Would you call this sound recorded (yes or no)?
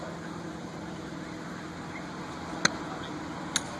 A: yes